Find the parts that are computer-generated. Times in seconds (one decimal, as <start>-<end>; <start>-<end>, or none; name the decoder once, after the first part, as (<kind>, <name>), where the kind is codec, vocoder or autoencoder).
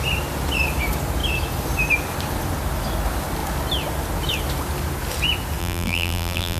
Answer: 5.6-6.6 (vocoder, BigVGAN v2)